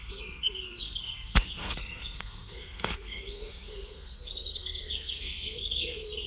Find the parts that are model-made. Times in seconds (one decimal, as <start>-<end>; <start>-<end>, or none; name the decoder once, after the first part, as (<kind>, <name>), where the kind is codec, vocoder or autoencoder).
0.0-6.3 (codec, SNAC)